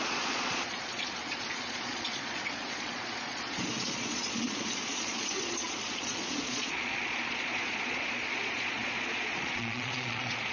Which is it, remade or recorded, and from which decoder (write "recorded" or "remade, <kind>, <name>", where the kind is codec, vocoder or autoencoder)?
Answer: remade, vocoder, Vocos